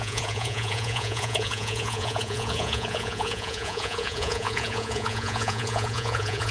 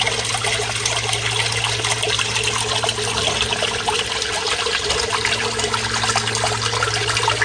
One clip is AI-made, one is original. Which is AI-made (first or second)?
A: first